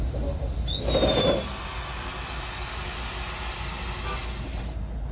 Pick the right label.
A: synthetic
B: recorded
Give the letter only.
B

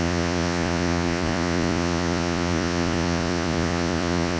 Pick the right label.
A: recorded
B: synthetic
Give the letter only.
B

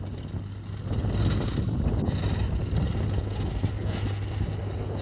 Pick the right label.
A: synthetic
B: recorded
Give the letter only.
B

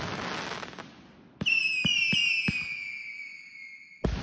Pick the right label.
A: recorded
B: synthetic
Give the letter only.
A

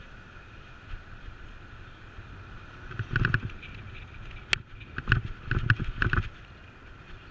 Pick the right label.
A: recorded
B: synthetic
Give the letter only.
A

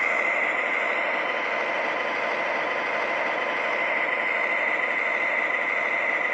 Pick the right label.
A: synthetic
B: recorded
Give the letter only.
B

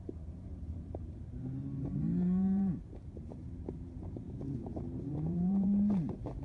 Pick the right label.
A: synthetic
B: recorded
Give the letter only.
A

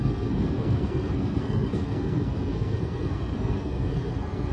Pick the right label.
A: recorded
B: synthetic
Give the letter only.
B